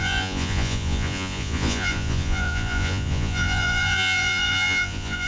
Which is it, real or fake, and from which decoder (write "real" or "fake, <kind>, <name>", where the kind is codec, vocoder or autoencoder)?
fake, vocoder, Vocos